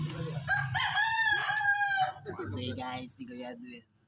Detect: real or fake real